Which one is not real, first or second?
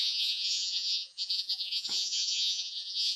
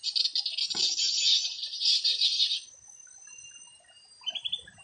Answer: first